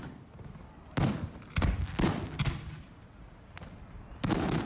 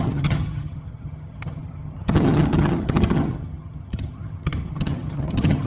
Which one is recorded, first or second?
first